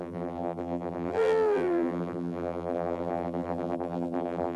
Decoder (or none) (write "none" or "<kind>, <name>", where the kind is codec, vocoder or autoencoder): vocoder, BigVGAN v2